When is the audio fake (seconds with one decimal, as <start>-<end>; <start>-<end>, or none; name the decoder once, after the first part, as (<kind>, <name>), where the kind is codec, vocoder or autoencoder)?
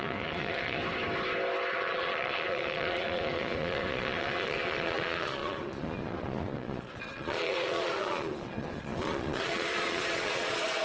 0.0-0.8 (vocoder, Vocos); 1.7-10.8